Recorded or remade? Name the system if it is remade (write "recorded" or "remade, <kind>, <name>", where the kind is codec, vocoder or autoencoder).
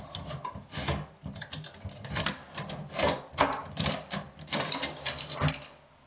recorded